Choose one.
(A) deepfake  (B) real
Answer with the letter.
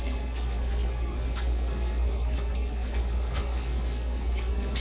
A